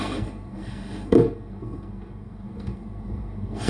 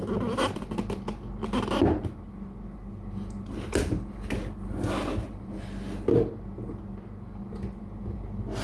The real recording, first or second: second